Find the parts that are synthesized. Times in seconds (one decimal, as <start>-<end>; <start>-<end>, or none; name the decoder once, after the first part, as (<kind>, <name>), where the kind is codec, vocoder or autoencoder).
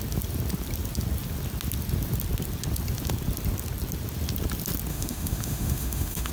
4.9-6.3 (autoencoder, DAC-VAE)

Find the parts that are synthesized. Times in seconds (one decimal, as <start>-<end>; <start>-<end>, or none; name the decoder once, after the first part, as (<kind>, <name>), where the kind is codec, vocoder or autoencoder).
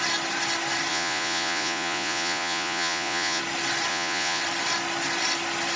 0.9-3.4 (vocoder, Vocos); 3.9-4.4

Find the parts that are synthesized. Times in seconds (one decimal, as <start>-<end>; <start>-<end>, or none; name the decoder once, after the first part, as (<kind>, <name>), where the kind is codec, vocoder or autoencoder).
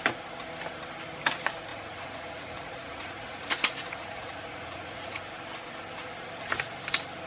1.7-5.2 (vocoder, Vocos)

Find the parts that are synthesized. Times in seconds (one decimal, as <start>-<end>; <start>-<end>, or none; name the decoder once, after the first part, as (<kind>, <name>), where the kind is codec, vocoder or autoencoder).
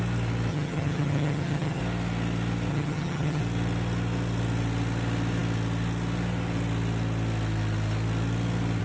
0.5-1.8 (vocoder, HiFi-GAN); 2.7-3.4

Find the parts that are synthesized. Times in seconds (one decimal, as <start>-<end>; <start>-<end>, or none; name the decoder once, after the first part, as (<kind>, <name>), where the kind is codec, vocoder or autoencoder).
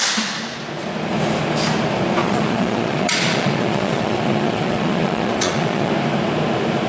2.2-5.9 (vocoder, Vocos)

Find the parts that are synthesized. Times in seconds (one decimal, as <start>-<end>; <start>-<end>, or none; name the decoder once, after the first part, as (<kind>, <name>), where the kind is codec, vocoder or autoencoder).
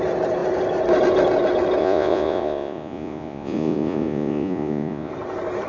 1.8-5.1 (vocoder, Vocos)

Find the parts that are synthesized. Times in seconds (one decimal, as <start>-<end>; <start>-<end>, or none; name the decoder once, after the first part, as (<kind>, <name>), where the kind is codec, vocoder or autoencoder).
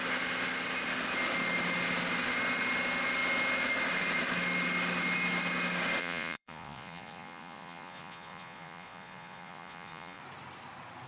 6.0-10.2 (vocoder, Vocos)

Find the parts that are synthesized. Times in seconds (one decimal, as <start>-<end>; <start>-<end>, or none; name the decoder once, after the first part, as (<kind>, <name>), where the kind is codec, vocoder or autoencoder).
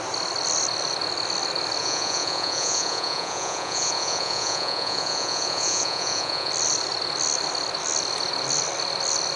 1.8-6.5 (vocoder, Vocos)